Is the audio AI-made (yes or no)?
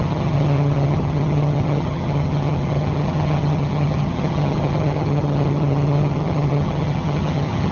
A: yes